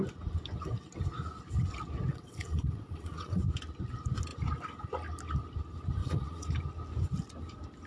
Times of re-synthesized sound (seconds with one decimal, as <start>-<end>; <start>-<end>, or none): 2.1-3.4; 6.0-6.5

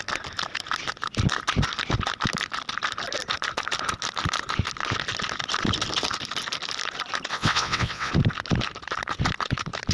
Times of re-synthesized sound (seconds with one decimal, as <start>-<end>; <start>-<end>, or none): 7.3-8.1